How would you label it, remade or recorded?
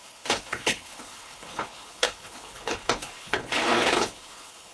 remade